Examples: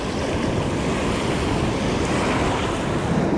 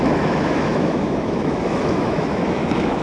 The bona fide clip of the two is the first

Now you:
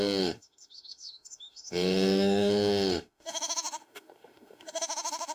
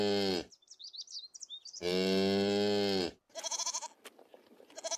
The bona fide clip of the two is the second